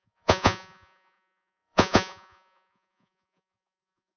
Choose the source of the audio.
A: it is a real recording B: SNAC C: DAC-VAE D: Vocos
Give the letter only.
D